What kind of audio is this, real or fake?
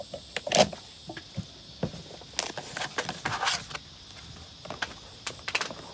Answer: real